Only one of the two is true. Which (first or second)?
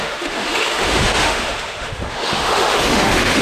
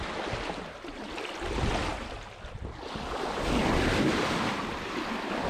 second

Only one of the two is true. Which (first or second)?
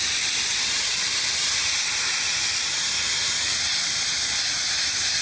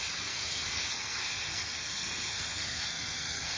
first